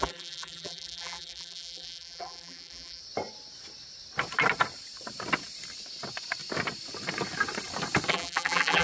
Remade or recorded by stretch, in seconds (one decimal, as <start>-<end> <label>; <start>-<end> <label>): 0.0-3.0 remade; 3.0-8.1 recorded; 8.1-8.8 remade